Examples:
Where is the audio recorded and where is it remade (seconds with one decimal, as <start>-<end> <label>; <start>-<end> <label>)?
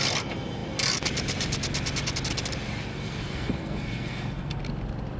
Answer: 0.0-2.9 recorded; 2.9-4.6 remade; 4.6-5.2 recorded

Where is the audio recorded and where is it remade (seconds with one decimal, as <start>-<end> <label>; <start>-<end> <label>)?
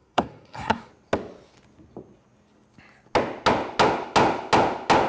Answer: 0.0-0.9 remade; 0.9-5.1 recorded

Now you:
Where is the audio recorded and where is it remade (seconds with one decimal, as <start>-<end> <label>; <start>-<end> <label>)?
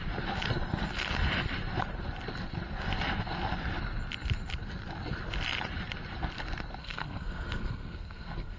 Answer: 0.0-6.8 recorded; 6.8-8.6 remade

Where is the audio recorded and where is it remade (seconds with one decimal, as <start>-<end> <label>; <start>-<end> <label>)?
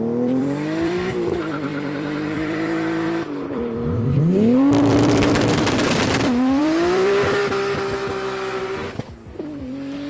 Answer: 0.0-7.4 remade; 7.4-9.6 recorded; 9.6-10.1 remade